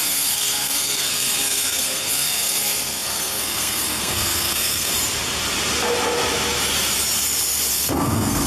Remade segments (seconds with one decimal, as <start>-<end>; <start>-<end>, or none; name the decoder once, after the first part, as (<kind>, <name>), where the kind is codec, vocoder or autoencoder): 0.0-4.9 (codec, SNAC); 7.7-8.5